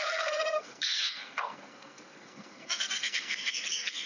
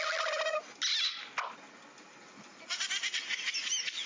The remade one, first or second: first